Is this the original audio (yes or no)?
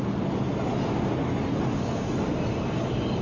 yes